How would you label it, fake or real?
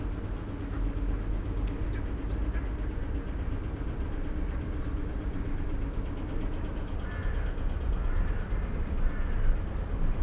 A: real